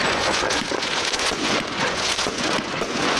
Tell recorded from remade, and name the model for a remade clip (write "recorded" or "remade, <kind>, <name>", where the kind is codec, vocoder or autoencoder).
remade, vocoder, Vocos